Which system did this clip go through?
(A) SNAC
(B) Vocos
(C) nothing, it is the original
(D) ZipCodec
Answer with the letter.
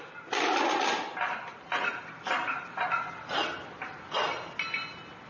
C